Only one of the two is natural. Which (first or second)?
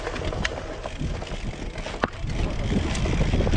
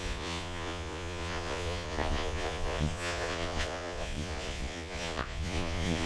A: first